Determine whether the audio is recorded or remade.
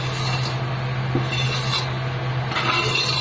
recorded